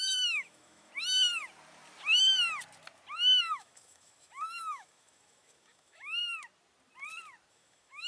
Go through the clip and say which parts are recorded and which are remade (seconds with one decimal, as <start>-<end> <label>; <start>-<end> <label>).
0.0-0.9 remade; 0.9-3.4 recorded; 3.4-6.2 remade; 6.2-7.5 recorded; 7.5-8.1 remade